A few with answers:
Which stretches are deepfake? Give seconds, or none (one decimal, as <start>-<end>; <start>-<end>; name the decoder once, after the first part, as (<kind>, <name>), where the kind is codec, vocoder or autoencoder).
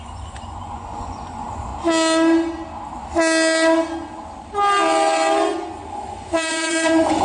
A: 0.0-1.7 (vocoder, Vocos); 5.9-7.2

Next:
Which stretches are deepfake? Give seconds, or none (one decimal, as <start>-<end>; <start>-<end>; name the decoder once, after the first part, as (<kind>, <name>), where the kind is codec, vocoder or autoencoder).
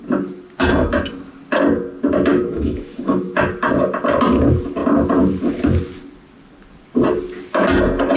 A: 2.3-3.4 (autoencoder, DAC-VAE)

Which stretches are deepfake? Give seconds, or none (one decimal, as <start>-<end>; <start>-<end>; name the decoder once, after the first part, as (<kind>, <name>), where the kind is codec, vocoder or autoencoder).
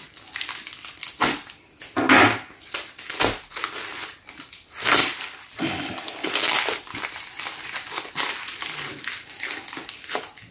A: 5.0-6.3 (vocoder, BigVGAN v2)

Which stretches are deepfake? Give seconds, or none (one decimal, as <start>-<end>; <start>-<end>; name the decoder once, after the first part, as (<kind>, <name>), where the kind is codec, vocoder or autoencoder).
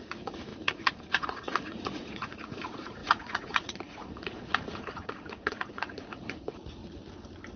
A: 0.0-6.8 (vocoder, Vocos)